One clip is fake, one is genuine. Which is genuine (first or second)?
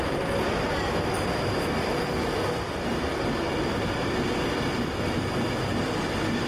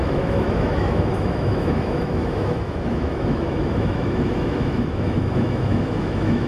first